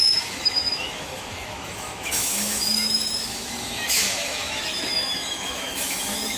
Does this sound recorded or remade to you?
remade